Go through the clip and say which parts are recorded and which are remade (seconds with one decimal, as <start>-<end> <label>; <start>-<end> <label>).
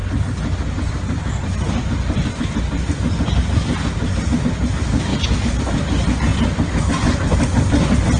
0.0-5.1 recorded; 5.1-5.6 remade; 5.6-8.2 recorded